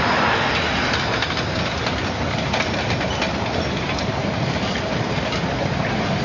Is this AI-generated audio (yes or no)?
no